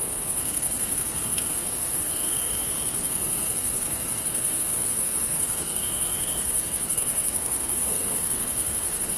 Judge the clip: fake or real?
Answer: fake